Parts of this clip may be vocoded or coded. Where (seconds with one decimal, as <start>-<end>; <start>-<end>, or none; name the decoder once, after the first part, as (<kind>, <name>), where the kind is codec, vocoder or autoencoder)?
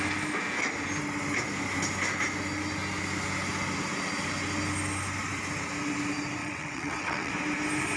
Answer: 6.4-7.3 (vocoder, WaveNeXt)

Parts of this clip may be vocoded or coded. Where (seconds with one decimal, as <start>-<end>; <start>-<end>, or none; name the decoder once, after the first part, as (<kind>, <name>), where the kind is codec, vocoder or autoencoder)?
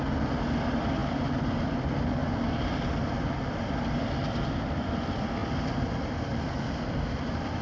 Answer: 0.0-2.2 (vocoder, BigVGAN v2); 2.8-5.4; 6.3-7.6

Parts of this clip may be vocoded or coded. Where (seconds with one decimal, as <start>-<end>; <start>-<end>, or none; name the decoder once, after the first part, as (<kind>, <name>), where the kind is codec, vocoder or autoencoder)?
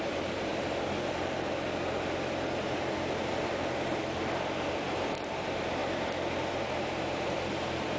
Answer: 0.0-0.5 (vocoder, BigVGAN v2); 4.7-5.8; 6.5-8.0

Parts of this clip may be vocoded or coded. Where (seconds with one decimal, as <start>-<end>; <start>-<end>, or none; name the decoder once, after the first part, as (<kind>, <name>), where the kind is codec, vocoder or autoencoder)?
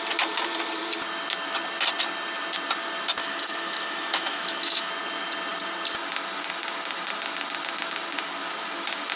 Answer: 3.2-4.9 (autoencoder, DAC-VAE)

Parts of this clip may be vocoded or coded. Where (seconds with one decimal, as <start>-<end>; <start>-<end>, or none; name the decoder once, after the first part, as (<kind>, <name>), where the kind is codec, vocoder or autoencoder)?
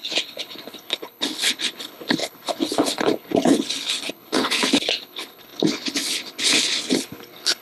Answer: 0.0-7.6 (codec, HILCodec)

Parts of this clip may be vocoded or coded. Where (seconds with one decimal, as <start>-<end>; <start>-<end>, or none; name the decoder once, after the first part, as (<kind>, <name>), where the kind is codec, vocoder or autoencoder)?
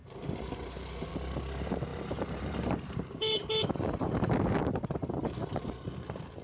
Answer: 0.0-1.1 (vocoder, BigVGAN v2); 1.9-5.7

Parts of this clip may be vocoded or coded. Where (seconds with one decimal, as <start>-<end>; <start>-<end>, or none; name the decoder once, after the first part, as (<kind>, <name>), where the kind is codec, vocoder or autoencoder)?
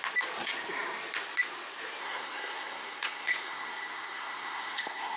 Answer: 2.0-5.2 (codec, SNAC)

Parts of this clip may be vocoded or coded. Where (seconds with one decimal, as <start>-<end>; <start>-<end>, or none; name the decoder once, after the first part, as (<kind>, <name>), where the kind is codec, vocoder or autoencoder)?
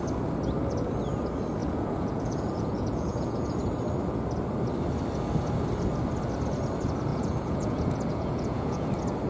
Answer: 1.6-3.6 (vocoder, Vocos); 7.1-8.9